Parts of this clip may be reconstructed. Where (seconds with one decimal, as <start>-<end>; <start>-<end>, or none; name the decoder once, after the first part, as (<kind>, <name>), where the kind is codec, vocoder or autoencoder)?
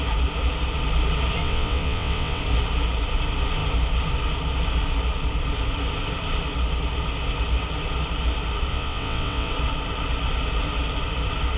1.4-2.4 (vocoder, WaveNeXt); 8.7-9.5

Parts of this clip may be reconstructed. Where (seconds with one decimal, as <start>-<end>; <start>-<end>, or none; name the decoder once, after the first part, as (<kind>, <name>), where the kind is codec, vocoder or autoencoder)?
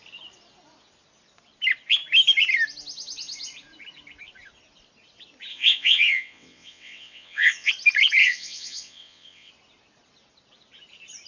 5.5-7.7 (vocoder, WaveNeXt); 8.2-9.5